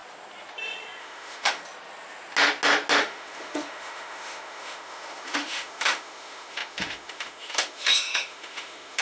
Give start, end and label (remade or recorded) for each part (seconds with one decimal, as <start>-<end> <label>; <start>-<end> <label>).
0.0-1.0 recorded; 1.0-1.6 remade; 1.6-3.0 recorded; 3.0-9.0 remade